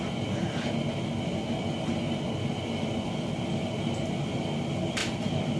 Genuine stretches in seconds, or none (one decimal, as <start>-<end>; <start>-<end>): 0.0-5.6